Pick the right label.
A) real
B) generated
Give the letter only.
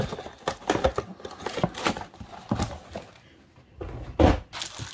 A